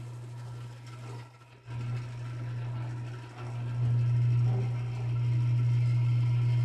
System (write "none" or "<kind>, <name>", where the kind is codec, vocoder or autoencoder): none